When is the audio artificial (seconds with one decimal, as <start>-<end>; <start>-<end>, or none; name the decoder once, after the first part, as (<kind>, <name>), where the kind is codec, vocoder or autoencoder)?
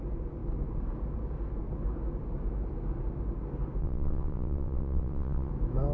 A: 3.8-5.5 (vocoder, WaveNeXt)